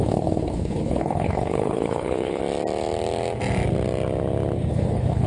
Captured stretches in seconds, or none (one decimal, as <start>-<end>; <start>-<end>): 2.4-4.7